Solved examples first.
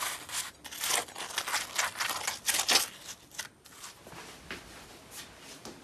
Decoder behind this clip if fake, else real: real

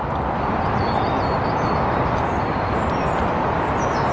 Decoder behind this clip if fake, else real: real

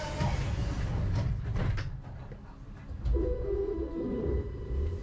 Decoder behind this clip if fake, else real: real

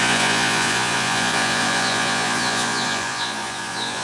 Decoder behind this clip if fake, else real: fake, vocoder, Vocos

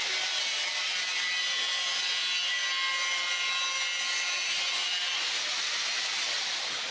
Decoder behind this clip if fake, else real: real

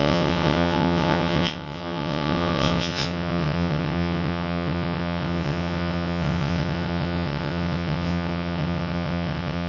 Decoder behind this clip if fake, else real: fake, vocoder, WaveNeXt